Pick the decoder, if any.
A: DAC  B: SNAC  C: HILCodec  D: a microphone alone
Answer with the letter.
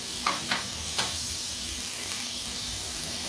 A